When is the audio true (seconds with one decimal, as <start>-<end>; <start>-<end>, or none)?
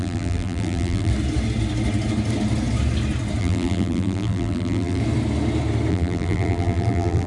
1.1-3.4; 5.0-5.9